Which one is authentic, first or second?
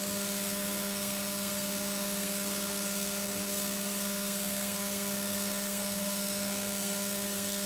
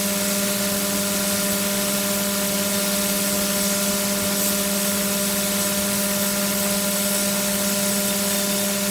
second